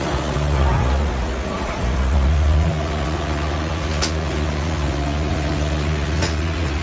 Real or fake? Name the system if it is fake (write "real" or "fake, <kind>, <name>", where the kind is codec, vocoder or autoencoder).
fake, vocoder, Vocos